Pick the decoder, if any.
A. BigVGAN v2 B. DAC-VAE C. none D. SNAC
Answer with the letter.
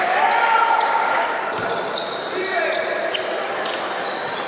A